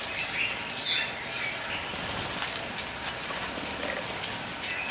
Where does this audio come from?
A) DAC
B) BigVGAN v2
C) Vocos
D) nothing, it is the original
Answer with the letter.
D